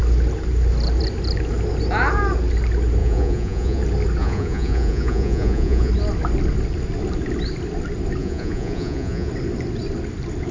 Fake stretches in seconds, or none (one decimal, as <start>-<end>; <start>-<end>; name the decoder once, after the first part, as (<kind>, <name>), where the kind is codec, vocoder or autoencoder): 3.0-3.8 (vocoder, Vocos); 4.2-5.9; 8.2-9.3